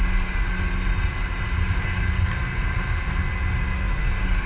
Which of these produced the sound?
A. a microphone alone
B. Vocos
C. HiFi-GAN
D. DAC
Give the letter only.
A